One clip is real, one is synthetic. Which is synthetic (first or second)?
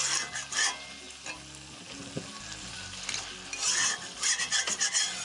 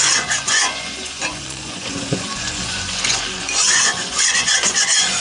second